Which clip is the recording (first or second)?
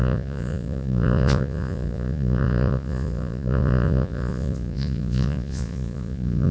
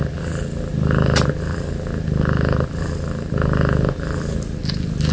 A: second